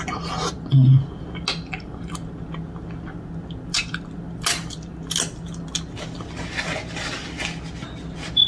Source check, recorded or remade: recorded